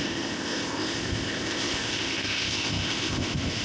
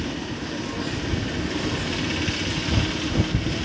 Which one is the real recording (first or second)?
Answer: second